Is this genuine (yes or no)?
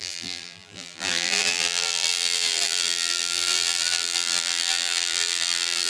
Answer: no